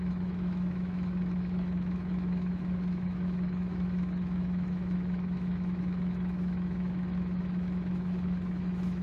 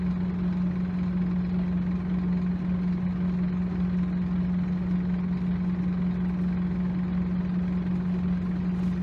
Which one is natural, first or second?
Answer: second